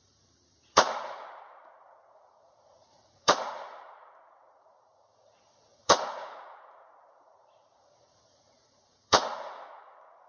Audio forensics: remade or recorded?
remade